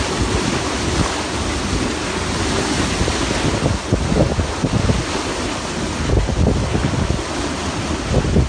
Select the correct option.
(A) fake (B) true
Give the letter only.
B